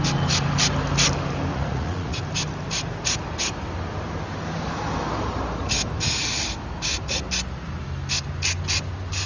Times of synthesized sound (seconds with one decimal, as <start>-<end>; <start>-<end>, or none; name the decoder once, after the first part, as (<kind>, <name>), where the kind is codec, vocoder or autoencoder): 1.5-2.2 (vocoder, Vocos)